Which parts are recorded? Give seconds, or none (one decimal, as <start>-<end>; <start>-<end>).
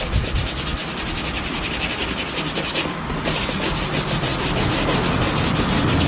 0.0-6.1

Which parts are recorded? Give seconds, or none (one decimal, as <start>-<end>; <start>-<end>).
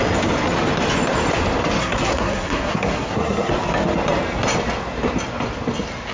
0.0-1.8; 3.5-6.1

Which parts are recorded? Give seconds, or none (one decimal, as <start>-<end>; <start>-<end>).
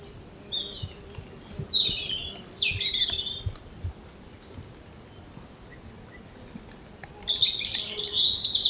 0.0-8.7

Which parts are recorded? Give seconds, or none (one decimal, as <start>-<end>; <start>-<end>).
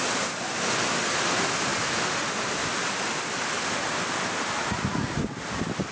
0.0-5.9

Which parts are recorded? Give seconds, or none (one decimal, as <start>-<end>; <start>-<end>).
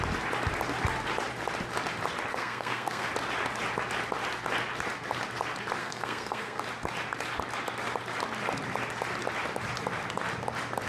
0.0-2.3; 3.1-5.8; 6.6-10.9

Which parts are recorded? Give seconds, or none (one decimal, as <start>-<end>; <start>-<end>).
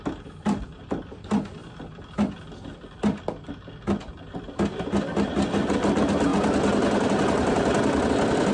0.0-8.5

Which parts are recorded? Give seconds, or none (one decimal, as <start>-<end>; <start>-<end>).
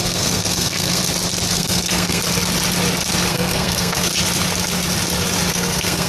1.0-1.5; 2.2-3.3; 4.1-5.5